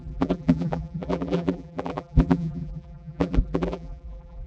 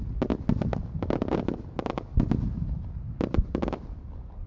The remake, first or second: first